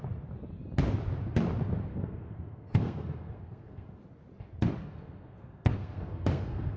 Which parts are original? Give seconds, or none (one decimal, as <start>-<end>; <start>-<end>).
0.0-1.9; 4.0-4.8